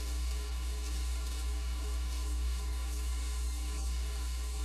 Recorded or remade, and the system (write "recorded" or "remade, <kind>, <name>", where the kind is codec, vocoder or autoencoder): remade, codec, DAC